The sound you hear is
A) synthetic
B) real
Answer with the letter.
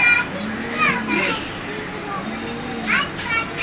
B